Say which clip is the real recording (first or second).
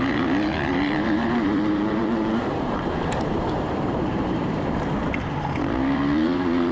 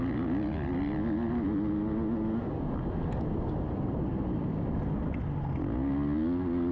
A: second